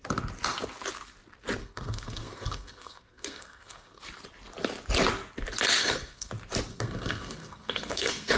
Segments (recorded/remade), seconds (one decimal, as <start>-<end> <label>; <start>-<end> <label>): 0.0-1.6 recorded; 1.6-4.0 remade; 4.0-5.8 recorded; 5.8-6.3 remade; 6.3-6.7 recorded; 6.7-8.4 remade